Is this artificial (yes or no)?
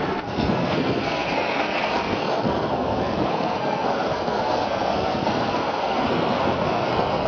yes